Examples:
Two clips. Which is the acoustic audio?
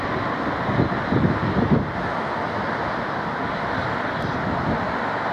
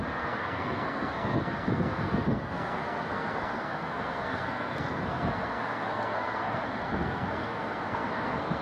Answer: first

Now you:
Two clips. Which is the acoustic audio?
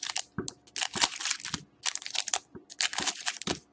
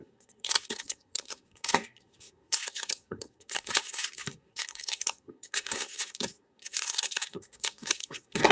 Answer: first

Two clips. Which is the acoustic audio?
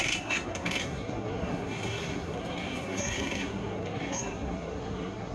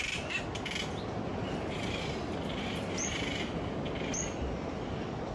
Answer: second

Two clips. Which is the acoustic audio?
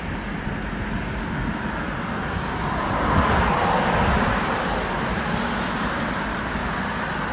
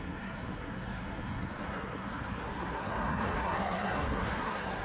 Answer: first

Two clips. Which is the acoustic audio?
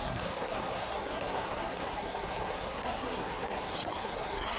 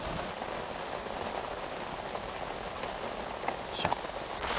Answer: second